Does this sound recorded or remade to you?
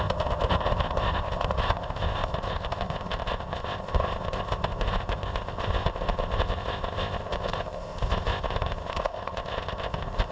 remade